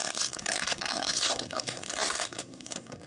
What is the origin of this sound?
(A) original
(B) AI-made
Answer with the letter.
B